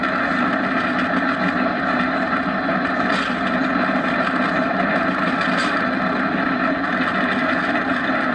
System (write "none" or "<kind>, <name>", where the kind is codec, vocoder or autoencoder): none